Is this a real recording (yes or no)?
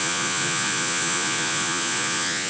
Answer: no